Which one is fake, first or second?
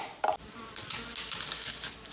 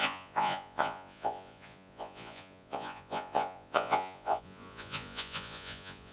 second